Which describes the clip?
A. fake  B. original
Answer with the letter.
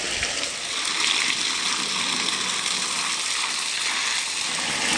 B